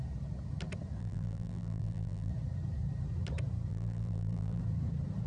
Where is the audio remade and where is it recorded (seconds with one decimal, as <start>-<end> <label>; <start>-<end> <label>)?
0.0-1.0 recorded; 1.0-2.3 remade; 2.3-3.7 recorded; 3.7-4.6 remade; 4.6-5.3 recorded